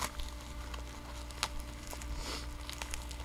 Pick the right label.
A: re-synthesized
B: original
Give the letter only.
B